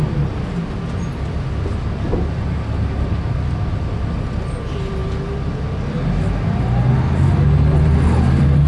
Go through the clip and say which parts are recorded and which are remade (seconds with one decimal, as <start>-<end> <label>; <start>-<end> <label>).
0.0-8.7 recorded